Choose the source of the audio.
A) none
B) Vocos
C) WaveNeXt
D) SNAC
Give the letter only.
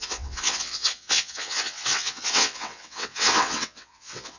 C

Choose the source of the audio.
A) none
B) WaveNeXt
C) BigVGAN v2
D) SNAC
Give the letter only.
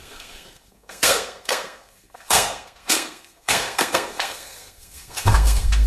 D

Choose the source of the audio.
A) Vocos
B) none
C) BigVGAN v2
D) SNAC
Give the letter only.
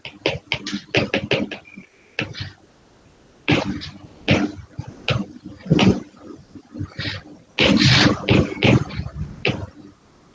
B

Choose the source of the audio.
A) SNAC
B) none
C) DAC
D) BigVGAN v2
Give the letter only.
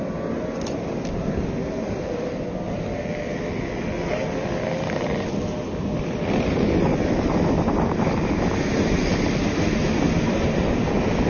B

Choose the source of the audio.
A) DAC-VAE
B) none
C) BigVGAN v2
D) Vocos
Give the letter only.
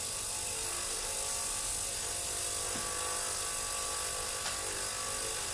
B